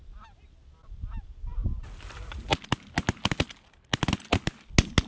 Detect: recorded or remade recorded